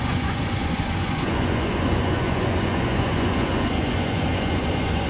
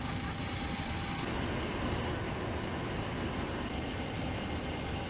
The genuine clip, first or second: second